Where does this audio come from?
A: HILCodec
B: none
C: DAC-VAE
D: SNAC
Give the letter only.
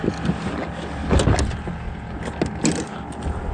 B